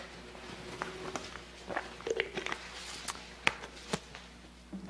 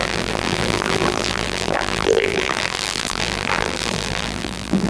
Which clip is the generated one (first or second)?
second